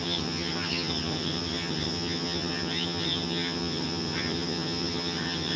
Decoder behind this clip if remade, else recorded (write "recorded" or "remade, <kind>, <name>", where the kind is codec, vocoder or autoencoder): remade, vocoder, HiFi-GAN